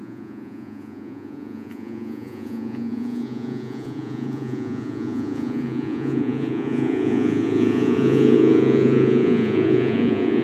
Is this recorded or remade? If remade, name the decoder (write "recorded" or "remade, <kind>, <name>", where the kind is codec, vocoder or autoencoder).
remade, vocoder, Vocos